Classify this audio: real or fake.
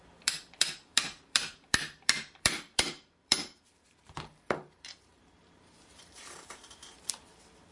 fake